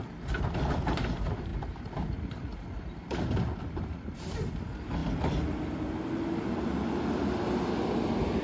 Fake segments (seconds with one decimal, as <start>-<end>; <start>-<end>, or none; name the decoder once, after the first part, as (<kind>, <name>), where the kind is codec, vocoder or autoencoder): 0.0-8.4 (vocoder, BigVGAN v2)